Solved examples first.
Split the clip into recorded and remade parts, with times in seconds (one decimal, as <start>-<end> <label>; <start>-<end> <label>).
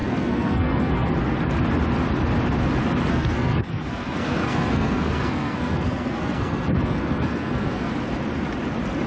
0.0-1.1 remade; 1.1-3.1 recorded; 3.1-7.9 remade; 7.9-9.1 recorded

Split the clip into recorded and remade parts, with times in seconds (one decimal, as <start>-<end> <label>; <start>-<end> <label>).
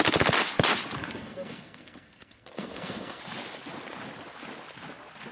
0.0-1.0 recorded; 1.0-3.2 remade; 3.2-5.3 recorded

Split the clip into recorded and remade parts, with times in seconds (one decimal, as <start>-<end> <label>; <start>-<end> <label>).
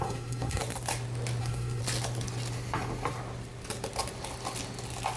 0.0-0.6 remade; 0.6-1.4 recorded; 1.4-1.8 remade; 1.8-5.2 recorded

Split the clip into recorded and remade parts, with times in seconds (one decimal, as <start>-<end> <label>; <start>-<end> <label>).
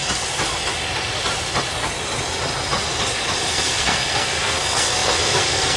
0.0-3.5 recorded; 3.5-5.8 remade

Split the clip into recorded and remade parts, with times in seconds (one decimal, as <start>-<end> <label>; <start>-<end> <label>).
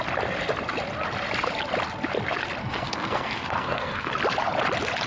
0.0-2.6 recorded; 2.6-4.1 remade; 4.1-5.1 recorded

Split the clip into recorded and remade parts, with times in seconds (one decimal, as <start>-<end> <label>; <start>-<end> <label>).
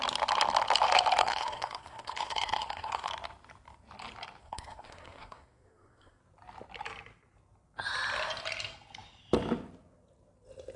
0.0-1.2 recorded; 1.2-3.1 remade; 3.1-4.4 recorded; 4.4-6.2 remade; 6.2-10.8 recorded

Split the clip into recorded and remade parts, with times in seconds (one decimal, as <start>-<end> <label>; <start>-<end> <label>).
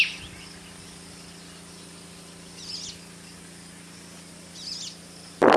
0.0-5.6 recorded